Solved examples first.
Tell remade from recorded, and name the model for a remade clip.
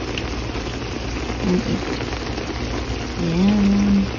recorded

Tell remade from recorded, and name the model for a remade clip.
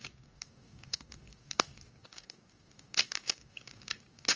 remade, codec, DAC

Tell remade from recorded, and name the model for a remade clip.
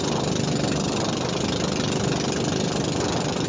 recorded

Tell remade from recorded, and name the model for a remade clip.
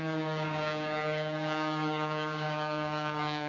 remade, codec, DAC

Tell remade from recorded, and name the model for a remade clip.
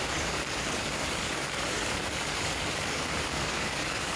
remade, codec, DAC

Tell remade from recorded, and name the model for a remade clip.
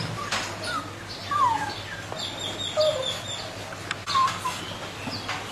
recorded